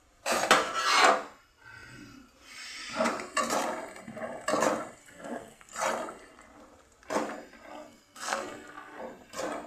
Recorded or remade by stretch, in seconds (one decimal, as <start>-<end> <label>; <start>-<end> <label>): 0.0-5.0 recorded; 5.0-5.7 remade; 5.7-7.7 recorded; 7.7-9.0 remade; 9.0-9.7 recorded